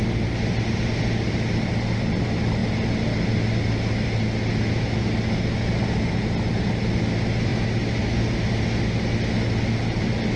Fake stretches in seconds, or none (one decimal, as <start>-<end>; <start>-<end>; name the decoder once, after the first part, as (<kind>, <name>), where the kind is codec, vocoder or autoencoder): none